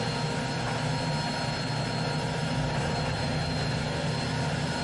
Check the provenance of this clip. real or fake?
real